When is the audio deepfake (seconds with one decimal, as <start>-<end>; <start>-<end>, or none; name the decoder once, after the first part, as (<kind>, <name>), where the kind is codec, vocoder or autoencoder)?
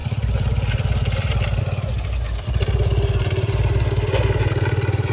none